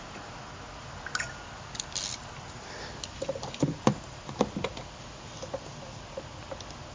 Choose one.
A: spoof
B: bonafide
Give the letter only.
B